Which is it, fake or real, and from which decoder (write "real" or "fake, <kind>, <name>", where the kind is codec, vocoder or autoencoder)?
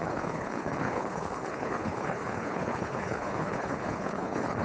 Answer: fake, codec, HILCodec